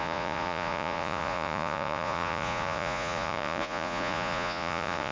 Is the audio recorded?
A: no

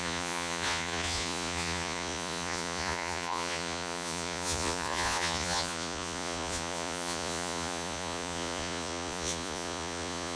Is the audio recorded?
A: no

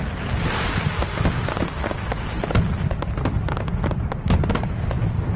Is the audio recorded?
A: yes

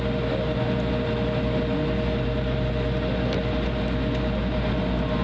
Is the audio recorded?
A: yes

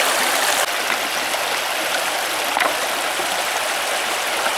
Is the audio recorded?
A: yes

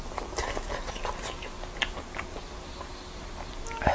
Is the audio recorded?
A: yes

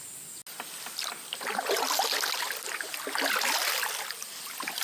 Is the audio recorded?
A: yes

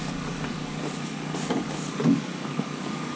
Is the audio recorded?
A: no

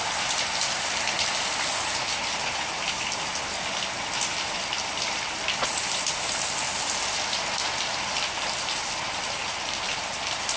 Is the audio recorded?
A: yes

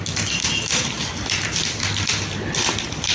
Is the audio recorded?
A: no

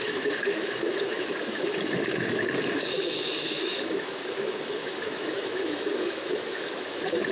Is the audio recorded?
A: no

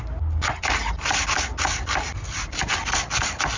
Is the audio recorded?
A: yes